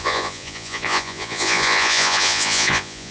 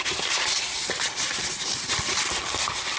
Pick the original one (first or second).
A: second